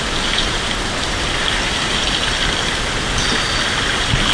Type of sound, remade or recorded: recorded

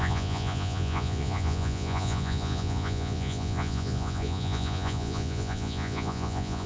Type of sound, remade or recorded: remade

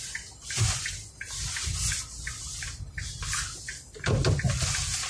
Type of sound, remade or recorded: recorded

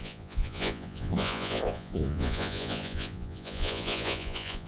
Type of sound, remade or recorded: remade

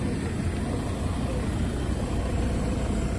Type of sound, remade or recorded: recorded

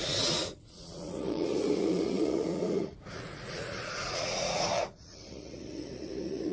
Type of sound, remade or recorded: remade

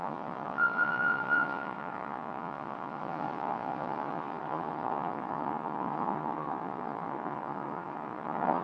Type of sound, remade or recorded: remade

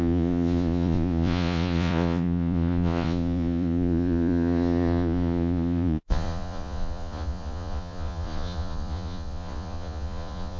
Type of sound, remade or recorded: remade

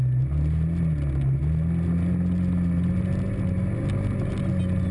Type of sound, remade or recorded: recorded